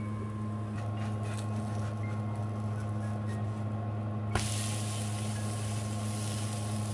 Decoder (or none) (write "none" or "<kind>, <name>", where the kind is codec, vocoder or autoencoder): none